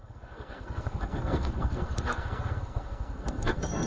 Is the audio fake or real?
fake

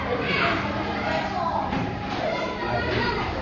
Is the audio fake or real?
fake